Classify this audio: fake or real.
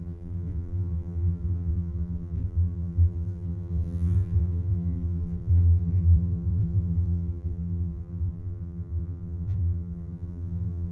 fake